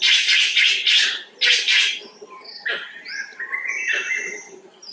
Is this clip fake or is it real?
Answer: real